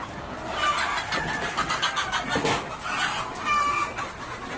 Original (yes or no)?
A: yes